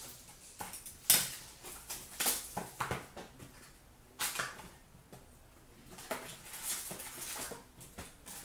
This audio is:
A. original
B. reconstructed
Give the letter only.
A